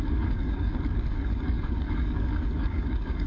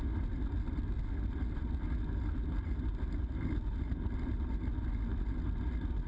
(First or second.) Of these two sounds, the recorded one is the second